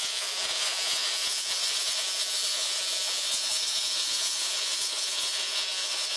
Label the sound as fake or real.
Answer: fake